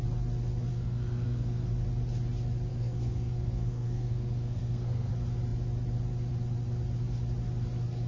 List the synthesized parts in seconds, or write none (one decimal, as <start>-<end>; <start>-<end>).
0.7-1.7; 2.7-5.1

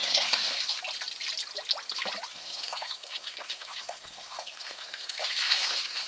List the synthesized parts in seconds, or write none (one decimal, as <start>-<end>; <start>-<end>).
0.0-0.8; 2.3-6.1